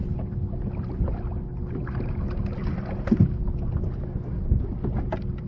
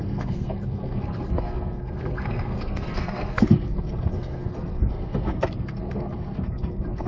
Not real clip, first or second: second